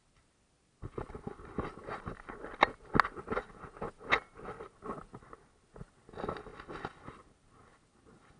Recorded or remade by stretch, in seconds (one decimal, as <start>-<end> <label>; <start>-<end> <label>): 0.0-8.4 recorded